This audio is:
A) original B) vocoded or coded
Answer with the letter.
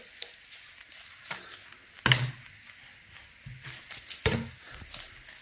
A